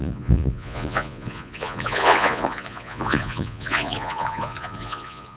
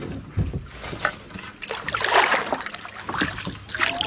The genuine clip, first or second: second